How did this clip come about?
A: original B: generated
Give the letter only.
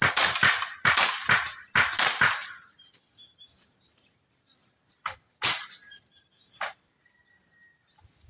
A